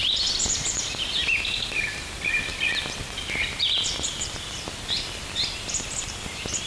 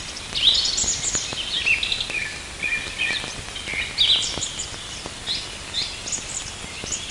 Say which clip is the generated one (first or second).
first